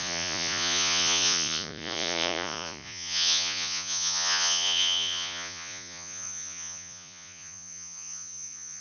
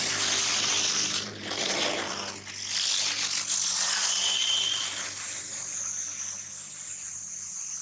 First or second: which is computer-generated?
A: first